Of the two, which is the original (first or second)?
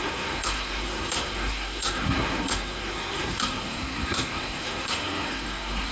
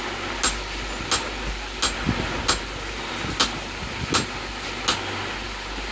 second